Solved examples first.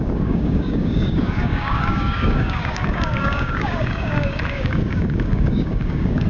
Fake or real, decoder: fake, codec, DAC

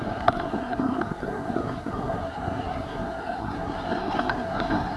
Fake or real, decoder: fake, codec, SNAC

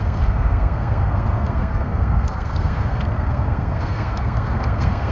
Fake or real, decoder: fake, codec, SNAC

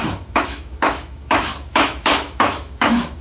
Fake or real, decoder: fake, autoencoder, DAC-VAE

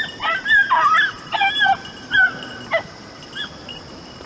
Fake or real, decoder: real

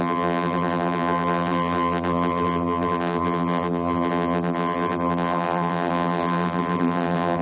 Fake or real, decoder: fake, vocoder, BigVGAN v2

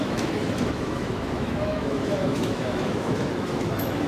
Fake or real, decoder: fake, autoencoder, DAC-VAE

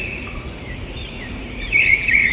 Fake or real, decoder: fake, vocoder, Vocos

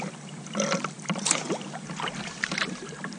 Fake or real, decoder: fake, vocoder, BigVGAN v2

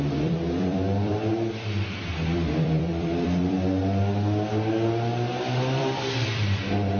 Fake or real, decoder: fake, vocoder, BigVGAN v2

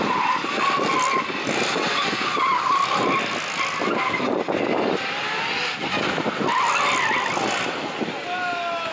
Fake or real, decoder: real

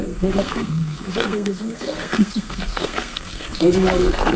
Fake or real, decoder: fake, codec, SNAC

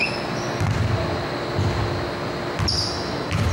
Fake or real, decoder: real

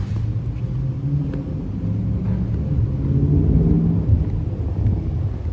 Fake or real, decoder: real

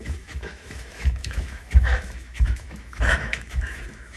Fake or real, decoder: fake, autoencoder, DAC-VAE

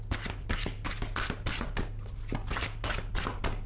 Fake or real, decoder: real